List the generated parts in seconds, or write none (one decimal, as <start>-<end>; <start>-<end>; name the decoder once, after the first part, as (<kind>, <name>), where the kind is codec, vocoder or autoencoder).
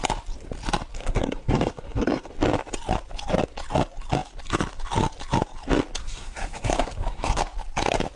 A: 0.9-2.3 (codec, SNAC); 6.0-7.4